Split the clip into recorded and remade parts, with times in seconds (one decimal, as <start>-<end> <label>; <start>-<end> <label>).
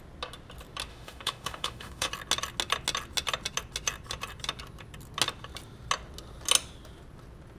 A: 0.0-0.9 recorded; 0.9-2.1 remade; 2.1-7.6 recorded